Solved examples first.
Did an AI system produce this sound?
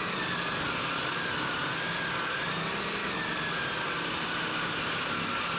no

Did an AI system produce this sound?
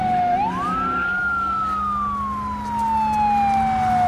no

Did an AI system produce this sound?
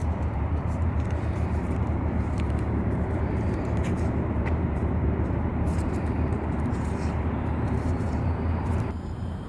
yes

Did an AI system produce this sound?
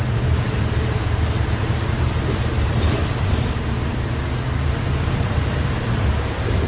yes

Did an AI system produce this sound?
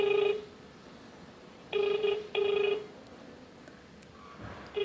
no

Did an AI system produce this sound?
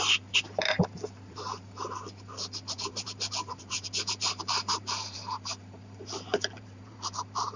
yes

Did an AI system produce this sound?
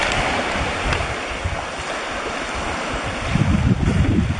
no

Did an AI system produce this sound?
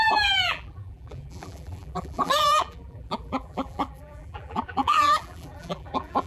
yes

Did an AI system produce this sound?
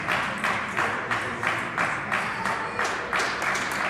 no